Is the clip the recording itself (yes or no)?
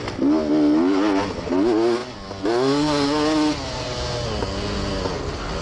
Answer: yes